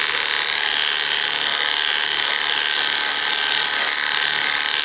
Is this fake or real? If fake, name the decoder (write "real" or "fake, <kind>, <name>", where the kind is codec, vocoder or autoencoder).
real